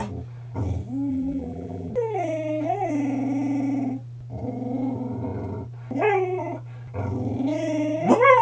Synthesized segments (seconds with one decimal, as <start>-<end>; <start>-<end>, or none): 1.1-1.9